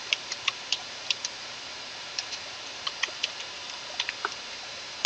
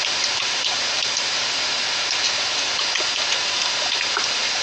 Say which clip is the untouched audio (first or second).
second